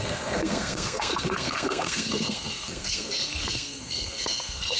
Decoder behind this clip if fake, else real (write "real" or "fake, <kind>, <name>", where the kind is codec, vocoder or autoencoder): fake, codec, SNAC